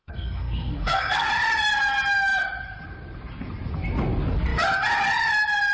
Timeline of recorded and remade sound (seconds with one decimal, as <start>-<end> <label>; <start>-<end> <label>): 0.0-1.3 remade; 1.3-5.7 recorded

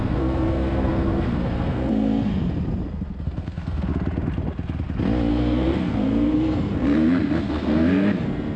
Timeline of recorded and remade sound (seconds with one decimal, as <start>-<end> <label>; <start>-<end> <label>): 0.0-2.3 remade; 2.3-3.2 recorded; 3.2-3.9 remade; 3.9-5.3 recorded; 5.3-8.6 remade